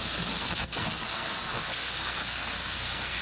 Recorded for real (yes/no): no